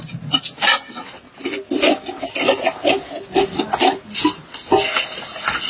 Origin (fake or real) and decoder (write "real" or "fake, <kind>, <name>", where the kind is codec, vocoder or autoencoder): real